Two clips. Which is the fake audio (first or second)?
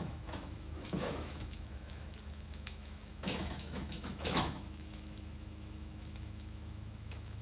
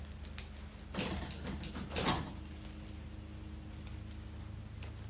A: first